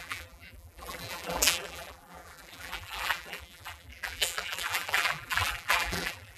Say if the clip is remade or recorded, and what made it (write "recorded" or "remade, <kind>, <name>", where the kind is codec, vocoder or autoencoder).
remade, vocoder, BigVGAN v2